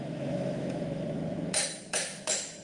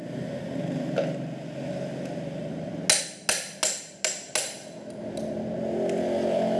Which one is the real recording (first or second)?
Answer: second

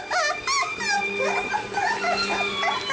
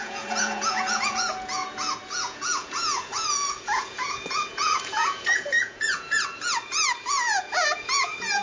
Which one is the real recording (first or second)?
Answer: first